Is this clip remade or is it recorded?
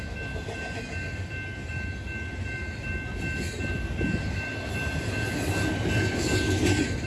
recorded